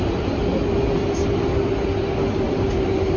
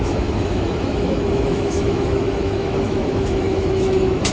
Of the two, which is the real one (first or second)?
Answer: first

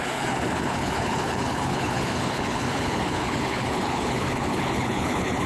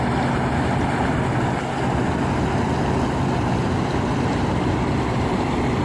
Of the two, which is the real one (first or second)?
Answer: second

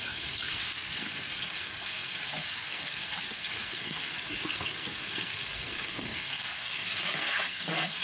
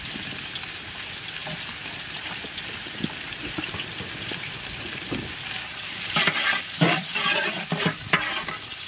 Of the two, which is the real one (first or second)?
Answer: second